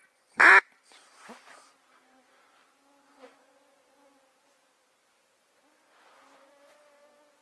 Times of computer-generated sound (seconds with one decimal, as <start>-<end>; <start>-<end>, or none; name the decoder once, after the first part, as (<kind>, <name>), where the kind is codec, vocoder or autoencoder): 0.0-0.5 (vocoder, Vocos)